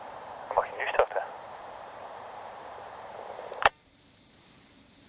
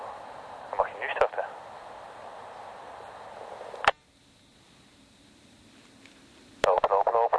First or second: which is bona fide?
second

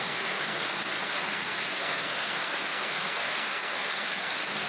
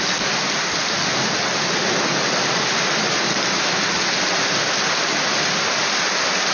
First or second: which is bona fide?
second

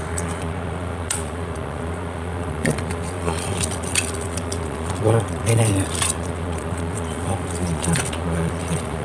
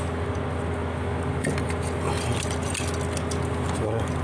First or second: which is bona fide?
second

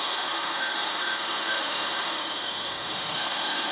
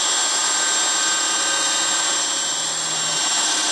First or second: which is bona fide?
second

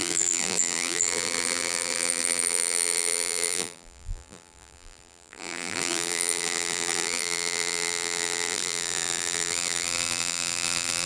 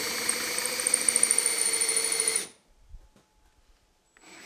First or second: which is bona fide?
second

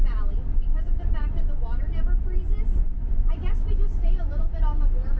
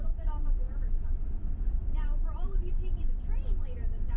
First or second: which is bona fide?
first